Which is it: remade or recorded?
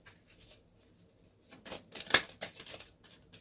recorded